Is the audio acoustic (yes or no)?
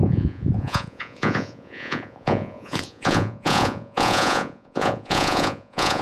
no